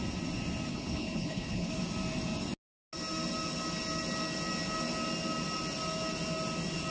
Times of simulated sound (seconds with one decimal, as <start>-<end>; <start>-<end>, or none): 0.7-1.7